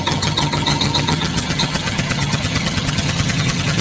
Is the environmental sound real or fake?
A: fake